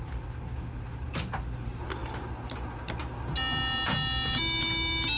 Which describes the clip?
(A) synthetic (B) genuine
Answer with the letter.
B